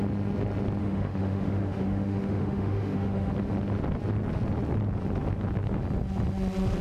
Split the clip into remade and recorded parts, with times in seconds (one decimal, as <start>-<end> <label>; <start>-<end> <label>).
0.0-0.8 recorded; 0.8-3.3 remade; 3.3-6.8 recorded